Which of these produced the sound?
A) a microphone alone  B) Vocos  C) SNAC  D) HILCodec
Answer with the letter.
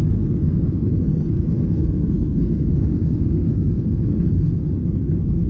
C